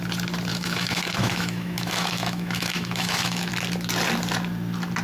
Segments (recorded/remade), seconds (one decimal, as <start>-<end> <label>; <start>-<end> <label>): 0.0-0.5 recorded; 0.5-3.5 remade; 3.5-5.0 recorded